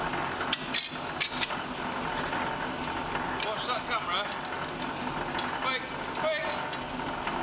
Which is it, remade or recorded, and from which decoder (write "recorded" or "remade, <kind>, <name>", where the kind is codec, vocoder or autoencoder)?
recorded